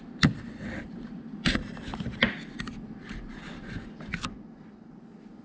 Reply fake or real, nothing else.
real